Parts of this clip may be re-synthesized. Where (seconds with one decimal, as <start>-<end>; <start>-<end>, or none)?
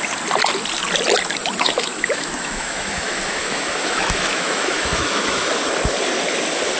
1.4-5.5